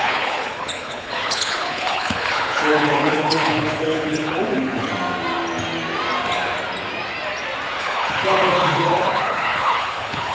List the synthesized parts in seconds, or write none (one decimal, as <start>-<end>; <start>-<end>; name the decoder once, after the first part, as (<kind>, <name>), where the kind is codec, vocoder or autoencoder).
0.0-4.9 (codec, HILCodec); 7.8-10.3